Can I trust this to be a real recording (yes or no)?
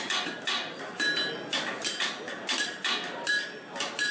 yes